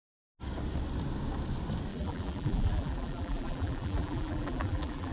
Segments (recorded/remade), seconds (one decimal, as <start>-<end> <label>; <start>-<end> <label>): 0.0-1.9 recorded; 1.9-5.1 remade